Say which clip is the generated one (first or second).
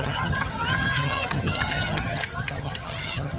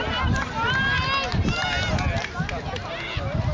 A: first